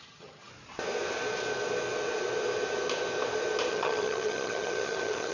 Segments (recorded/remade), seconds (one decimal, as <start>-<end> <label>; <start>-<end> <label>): 0.0-0.5 remade; 0.5-3.7 recorded; 3.7-5.3 remade